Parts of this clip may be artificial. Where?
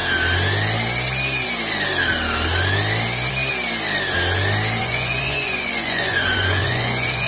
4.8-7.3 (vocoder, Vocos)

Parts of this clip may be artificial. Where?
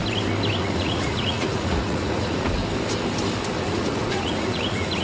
0.6-2.6 (vocoder, Vocos); 3.6-5.0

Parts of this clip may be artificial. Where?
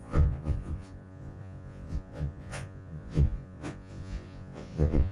0.0-5.1 (vocoder, Vocos)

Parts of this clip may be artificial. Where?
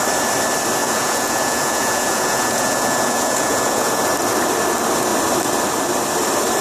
0.8-4.0 (vocoder, Vocos)